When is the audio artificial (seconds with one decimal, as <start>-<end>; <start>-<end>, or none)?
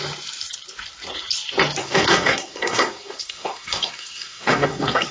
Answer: 1.8-5.1